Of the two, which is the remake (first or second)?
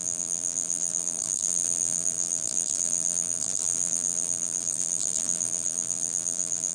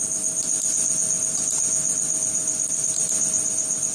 first